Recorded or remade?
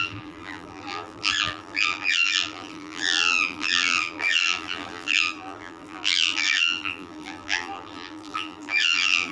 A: remade